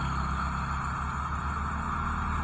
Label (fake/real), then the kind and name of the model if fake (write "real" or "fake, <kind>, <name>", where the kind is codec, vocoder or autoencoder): real